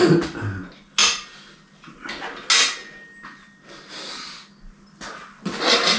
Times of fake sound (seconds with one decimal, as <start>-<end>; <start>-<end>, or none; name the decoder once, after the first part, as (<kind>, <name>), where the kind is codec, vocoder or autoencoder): none